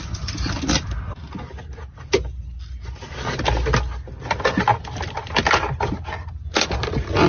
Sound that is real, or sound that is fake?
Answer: real